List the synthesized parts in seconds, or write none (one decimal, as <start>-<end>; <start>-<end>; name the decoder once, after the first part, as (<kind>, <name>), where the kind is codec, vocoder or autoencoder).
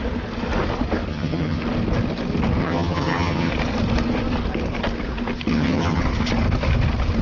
1.1-1.6 (vocoder, HiFi-GAN); 2.6-3.5; 5.5-6.0